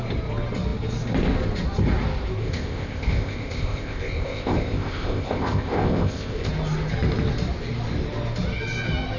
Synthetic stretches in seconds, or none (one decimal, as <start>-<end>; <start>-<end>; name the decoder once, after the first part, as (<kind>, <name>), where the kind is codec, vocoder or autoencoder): 2.4-6.5 (codec, ZipCodec)